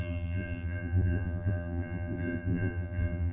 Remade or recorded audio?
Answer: remade